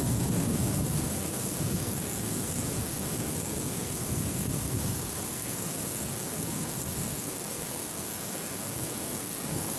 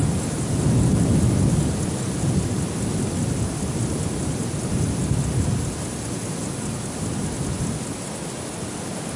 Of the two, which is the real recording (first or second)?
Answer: second